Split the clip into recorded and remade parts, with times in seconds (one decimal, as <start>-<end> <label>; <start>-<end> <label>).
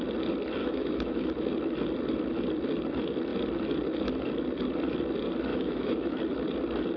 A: 0.0-0.6 recorded; 0.6-1.3 remade; 1.3-5.5 recorded; 5.5-6.2 remade; 6.2-7.0 recorded